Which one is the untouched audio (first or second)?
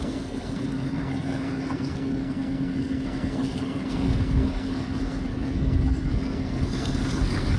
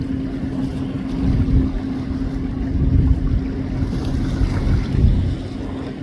second